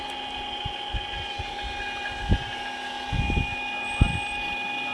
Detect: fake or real real